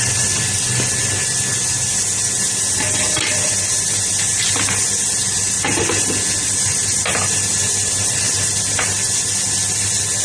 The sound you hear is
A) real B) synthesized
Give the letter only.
A